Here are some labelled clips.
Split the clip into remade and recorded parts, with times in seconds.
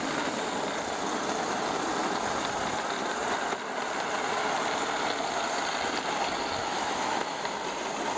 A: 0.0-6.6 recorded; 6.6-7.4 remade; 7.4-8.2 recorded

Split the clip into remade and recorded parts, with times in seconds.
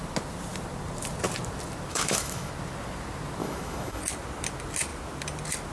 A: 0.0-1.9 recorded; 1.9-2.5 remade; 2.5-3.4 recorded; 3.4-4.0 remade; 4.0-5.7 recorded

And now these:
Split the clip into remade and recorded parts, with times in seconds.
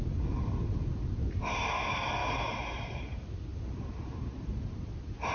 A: 0.0-2.2 recorded; 2.2-3.0 remade; 3.0-5.3 recorded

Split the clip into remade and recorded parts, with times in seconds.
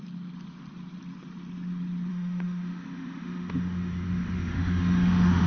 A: 0.0-2.1 recorded; 2.1-5.5 remade